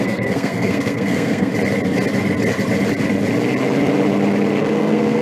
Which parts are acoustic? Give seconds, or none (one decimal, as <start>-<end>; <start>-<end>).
1.5-4.6